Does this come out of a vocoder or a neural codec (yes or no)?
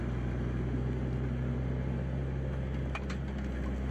no